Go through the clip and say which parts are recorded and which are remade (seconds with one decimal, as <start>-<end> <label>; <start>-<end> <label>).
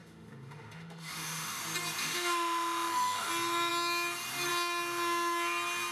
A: 0.0-1.6 remade; 1.6-2.0 recorded; 2.0-3.3 remade; 3.3-5.9 recorded